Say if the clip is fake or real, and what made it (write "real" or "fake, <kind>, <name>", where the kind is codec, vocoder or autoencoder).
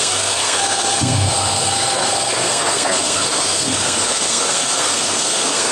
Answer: fake, codec, SNAC